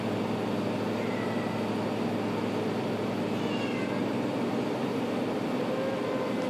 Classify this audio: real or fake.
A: real